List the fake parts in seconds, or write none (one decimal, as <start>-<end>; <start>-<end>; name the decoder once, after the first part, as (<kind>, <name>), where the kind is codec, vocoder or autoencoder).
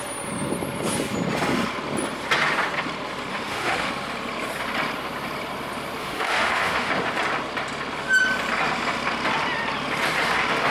3.3-3.9 (autoencoder, DAC-VAE); 6.0-6.9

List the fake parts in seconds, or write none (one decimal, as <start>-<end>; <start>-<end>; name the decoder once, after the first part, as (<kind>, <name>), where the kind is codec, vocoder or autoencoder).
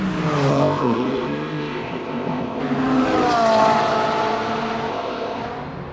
0.5-2.6 (codec, ZipCodec); 4.9-5.4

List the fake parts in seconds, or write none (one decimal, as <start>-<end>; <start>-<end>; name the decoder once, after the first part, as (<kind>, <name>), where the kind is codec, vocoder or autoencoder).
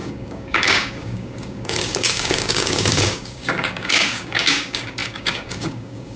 0.0-6.2 (codec, DAC)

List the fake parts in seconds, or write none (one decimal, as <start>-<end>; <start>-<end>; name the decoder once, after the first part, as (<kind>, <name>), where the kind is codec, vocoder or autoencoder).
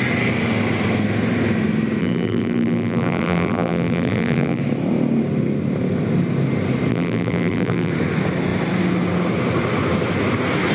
2.0-4.6 (vocoder, BigVGAN v2); 6.9-7.9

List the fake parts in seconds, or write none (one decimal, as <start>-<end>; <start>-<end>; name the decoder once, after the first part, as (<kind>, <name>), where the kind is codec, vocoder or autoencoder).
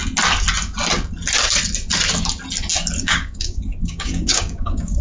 3.0-5.0 (codec, DAC)